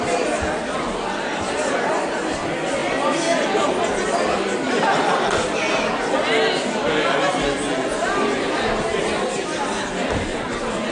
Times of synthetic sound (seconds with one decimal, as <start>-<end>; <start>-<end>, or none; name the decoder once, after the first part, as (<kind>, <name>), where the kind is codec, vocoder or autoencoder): none